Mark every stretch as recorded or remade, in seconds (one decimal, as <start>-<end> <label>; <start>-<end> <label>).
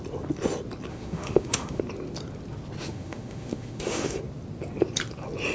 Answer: 0.0-0.9 recorded; 0.9-1.8 remade; 1.8-2.8 recorded; 2.8-4.2 remade; 4.2-5.5 recorded